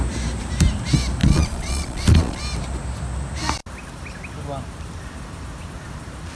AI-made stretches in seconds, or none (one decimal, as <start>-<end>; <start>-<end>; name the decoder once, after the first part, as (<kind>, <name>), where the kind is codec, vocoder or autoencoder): 1.2-2.4 (vocoder, Vocos)